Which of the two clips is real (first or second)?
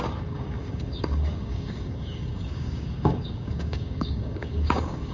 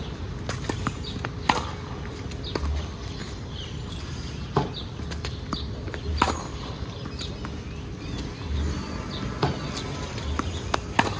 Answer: second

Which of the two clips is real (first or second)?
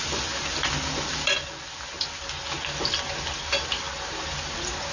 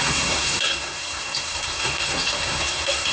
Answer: first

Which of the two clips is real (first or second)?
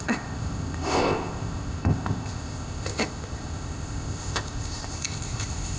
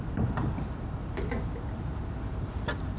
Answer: second